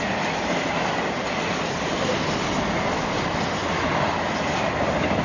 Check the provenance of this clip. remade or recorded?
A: recorded